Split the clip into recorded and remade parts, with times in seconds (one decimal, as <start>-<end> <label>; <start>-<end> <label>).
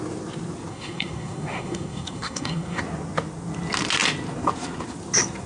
0.0-0.7 recorded; 0.7-2.8 remade; 2.8-5.5 recorded